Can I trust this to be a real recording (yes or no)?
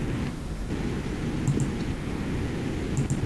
yes